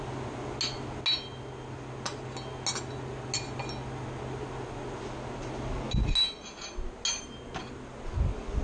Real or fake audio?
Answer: real